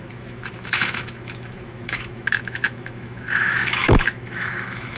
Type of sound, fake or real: fake